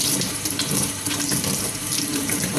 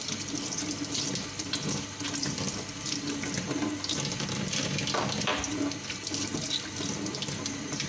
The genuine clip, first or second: second